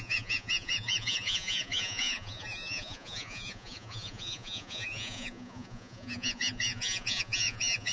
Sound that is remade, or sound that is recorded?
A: remade